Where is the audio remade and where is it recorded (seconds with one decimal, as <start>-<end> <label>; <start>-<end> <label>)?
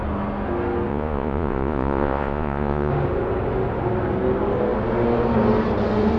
0.0-0.9 recorded; 0.9-2.9 remade; 2.9-6.2 recorded